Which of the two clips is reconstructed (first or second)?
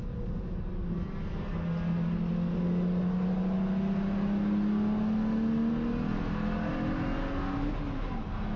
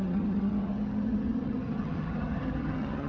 second